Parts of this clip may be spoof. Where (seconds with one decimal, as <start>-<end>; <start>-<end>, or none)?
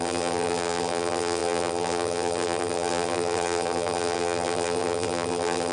0.0-5.7